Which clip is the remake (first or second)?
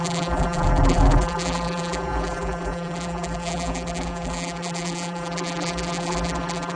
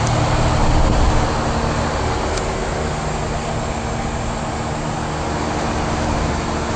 first